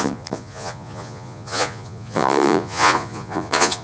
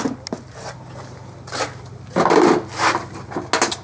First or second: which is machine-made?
first